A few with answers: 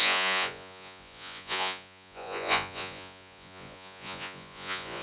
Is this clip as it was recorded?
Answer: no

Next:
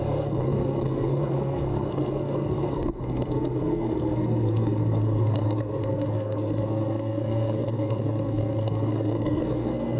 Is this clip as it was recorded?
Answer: no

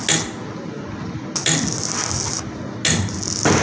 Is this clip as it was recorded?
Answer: yes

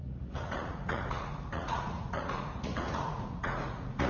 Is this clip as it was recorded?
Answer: no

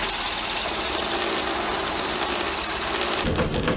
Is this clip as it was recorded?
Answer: yes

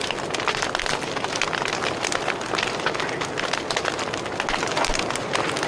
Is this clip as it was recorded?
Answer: yes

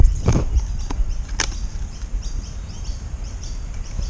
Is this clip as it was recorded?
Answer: yes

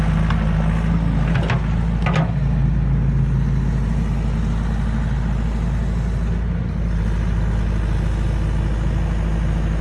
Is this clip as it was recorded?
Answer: yes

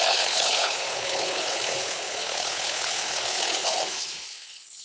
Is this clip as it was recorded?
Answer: no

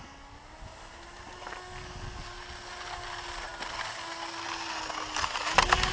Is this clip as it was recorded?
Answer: yes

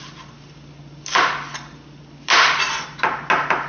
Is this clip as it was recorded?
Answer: yes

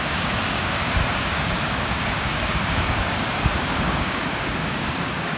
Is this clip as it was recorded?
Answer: no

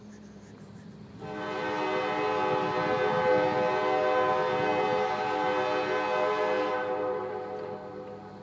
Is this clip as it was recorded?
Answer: yes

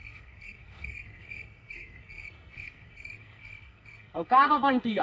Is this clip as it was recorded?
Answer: no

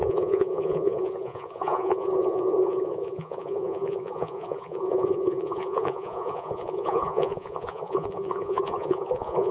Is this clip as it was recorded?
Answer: no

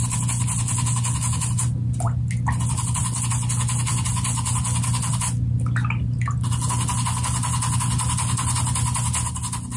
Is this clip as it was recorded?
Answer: yes